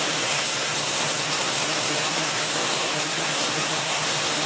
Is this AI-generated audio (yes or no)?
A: yes